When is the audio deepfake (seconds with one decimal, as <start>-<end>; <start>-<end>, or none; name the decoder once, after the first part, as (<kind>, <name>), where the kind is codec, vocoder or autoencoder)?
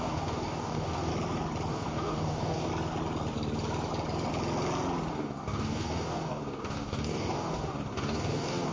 0.0-1.1 (codec, DAC); 1.7-2.7; 5.1-8.7